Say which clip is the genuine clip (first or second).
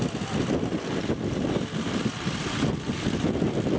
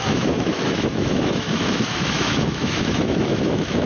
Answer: first